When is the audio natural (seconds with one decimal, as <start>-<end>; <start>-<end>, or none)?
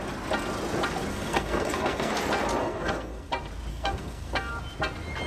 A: 0.0-1.1; 2.1-2.6; 3.3-3.7; 4.5-5.3